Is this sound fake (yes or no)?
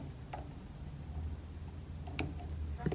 no